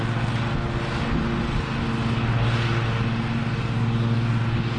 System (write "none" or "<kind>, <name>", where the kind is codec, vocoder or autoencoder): none